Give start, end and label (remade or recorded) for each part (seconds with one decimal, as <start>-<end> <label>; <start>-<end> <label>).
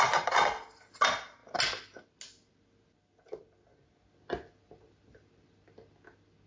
0.0-6.5 recorded